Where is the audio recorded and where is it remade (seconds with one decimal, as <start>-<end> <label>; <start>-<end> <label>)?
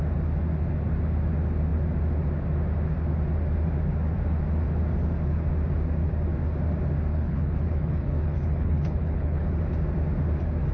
0.0-7.1 recorded; 7.1-9.5 remade; 9.5-10.7 recorded